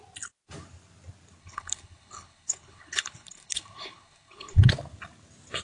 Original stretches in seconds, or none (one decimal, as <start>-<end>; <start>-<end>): 0.0-1.4; 4.7-5.6